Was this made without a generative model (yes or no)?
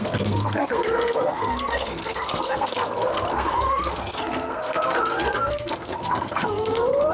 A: no